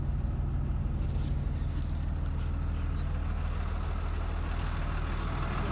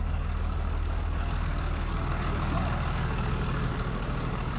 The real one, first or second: first